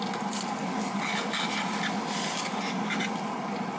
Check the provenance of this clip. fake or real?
real